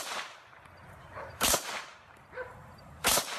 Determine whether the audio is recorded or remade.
remade